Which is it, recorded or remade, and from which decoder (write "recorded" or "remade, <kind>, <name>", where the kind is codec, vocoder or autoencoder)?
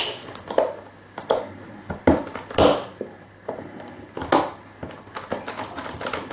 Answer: recorded